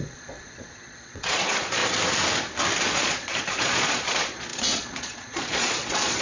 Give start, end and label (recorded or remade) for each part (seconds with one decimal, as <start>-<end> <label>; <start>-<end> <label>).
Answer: 0.0-1.8 remade; 1.8-2.9 recorded; 2.9-6.2 remade